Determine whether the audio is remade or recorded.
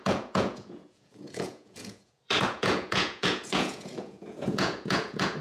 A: remade